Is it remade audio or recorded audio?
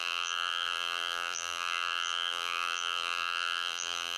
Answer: remade